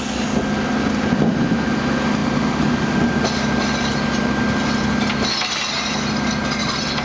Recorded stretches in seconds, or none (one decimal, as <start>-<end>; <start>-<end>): 0.0-7.0